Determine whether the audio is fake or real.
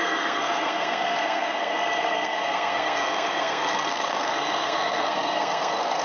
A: fake